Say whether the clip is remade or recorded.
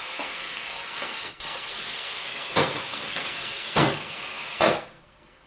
remade